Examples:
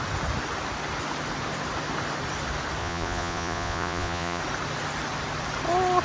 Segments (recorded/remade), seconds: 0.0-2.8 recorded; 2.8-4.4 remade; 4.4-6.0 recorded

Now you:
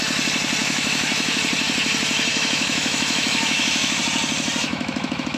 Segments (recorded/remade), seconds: 0.0-0.6 recorded; 0.6-1.4 remade; 1.4-2.3 recorded; 2.3-4.0 remade; 4.0-4.7 recorded; 4.7-5.4 remade